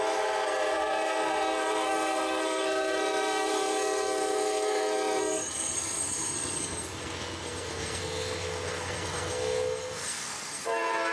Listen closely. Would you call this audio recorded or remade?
remade